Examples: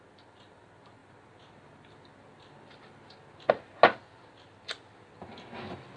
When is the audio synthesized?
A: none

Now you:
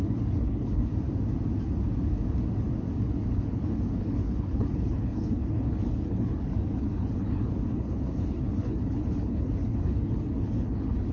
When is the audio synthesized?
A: 0.0-0.9 (codec, HILCodec); 3.3-11.1

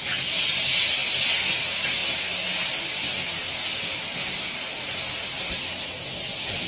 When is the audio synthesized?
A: none

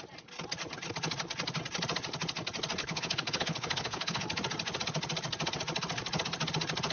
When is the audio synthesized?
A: 2.8-4.2 (codec, HILCodec)

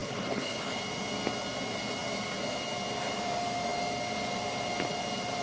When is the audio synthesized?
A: 0.0-0.8 (codec, HILCodec)

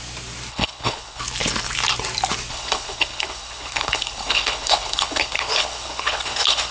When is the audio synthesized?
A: 0.5-1.2 (codec, HILCodec); 2.5-6.7

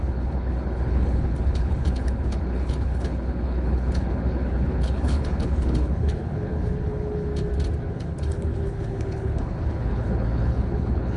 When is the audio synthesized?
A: 0.0-7.3 (codec, HILCodec); 7.9-11.2